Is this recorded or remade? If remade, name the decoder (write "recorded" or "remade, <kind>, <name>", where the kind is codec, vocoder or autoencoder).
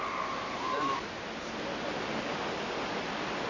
recorded